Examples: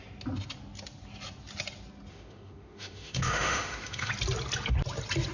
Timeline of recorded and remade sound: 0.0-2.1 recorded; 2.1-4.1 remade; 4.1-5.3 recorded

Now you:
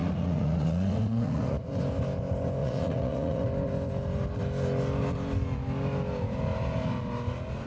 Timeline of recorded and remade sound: 0.0-1.7 remade; 1.7-2.6 recorded; 2.6-3.4 remade; 3.4-7.7 recorded

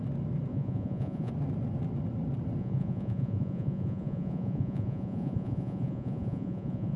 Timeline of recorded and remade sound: 0.0-0.5 recorded; 0.5-1.3 remade; 1.3-2.6 recorded; 2.6-7.0 remade

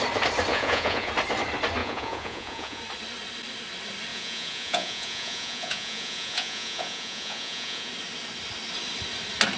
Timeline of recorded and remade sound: 0.0-0.5 recorded; 0.5-1.1 remade; 1.1-1.8 recorded; 1.8-2.8 remade; 2.8-4.1 recorded; 4.1-7.9 remade; 7.9-9.6 recorded